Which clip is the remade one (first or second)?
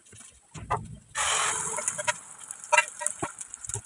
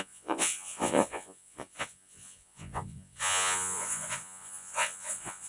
second